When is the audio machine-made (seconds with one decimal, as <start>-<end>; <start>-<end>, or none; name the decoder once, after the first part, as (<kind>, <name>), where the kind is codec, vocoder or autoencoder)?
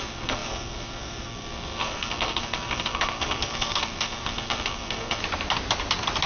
0.0-5.2 (codec, SNAC)